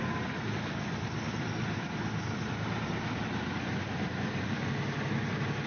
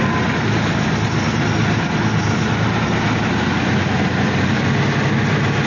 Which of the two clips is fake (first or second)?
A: first